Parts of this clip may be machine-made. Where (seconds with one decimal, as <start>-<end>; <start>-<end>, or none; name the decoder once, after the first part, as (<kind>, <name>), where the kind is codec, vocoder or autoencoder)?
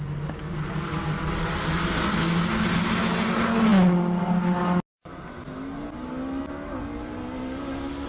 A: none